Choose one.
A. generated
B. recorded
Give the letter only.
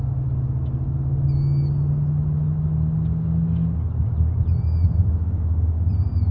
B